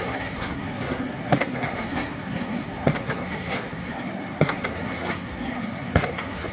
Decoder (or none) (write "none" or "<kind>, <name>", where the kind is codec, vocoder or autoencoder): codec, SNAC